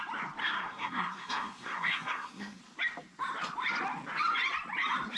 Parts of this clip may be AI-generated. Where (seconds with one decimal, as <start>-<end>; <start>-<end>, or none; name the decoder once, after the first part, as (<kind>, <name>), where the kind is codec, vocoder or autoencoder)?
0.4-2.6 (codec, SNAC)